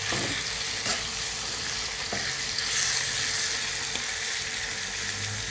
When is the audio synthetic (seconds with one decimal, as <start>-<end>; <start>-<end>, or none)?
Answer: none